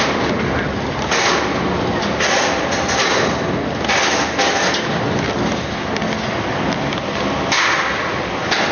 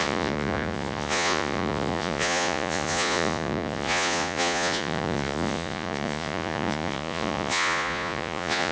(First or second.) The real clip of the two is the first